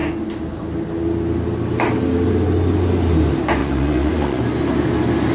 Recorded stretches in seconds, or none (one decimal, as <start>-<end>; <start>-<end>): 0.0-3.6; 4.4-5.3